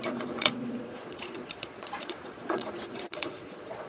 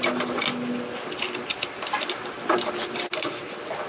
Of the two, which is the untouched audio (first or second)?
second